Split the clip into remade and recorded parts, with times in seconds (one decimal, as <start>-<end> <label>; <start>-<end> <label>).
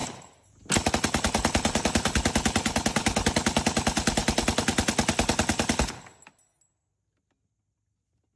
0.0-8.4 recorded